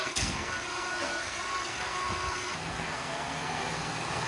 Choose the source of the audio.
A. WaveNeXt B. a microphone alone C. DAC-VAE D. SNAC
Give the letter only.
D